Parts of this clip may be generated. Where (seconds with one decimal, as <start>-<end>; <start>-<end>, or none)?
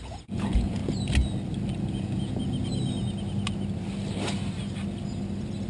0.0-0.8; 1.9-2.6